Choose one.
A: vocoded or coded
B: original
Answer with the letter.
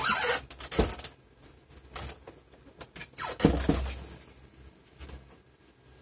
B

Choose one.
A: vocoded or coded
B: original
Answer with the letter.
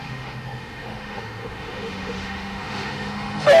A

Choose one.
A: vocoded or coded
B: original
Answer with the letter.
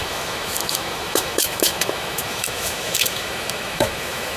A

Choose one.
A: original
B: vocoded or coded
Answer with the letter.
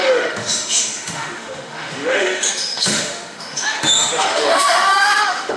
B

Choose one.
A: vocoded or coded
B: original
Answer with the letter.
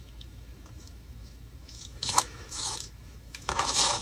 A